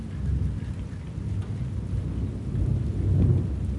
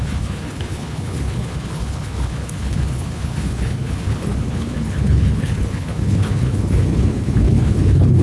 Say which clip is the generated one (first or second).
second